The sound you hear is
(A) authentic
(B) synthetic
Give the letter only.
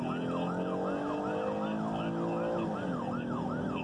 A